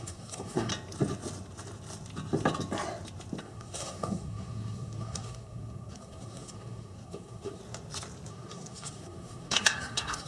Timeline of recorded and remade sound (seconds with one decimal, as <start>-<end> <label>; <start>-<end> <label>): 0.0-0.7 remade; 0.7-3.4 recorded; 3.4-7.6 remade; 7.6-8.3 recorded; 8.3-10.3 remade